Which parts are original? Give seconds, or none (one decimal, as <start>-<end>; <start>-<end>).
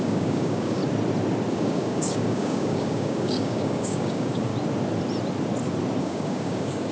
0.8-1.5; 4.5-6.0